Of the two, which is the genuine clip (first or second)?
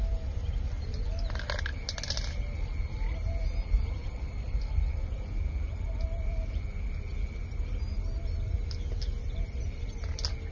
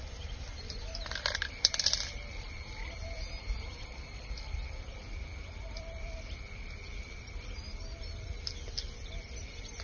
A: first